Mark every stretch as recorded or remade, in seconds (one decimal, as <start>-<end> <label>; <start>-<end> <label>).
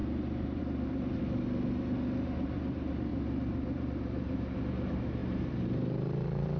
0.0-0.6 remade; 0.6-3.1 recorded; 3.1-4.6 remade; 4.6-5.2 recorded; 5.2-6.6 remade